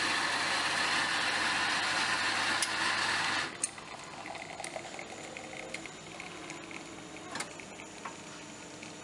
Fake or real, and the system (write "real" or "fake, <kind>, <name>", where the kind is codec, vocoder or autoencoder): real